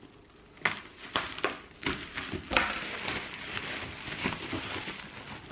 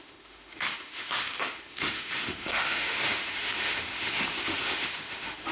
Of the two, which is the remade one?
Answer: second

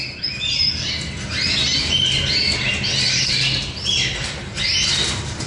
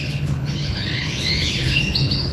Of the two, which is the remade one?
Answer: second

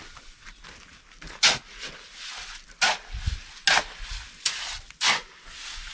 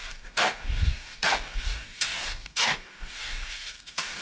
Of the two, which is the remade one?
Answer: second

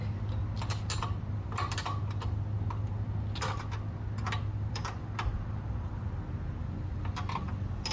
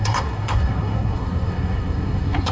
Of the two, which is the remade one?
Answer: second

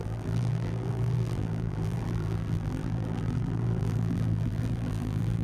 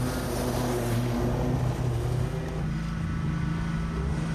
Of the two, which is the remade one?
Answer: first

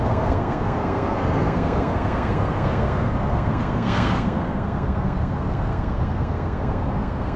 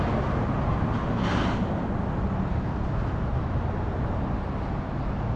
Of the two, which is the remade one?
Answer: first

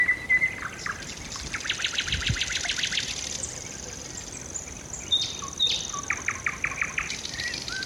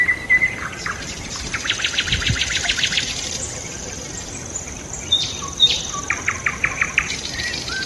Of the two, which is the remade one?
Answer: second